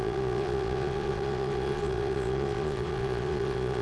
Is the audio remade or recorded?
remade